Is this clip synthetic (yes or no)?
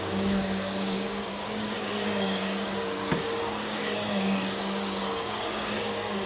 yes